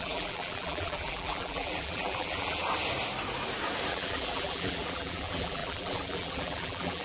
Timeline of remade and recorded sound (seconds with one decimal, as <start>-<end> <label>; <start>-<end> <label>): 0.0-2.6 remade; 2.6-3.9 recorded; 3.9-7.0 remade